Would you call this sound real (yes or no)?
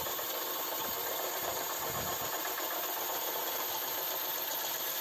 yes